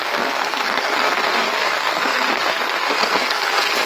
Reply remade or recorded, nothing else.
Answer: remade